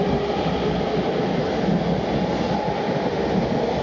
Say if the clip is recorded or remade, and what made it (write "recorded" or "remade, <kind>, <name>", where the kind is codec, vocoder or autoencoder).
recorded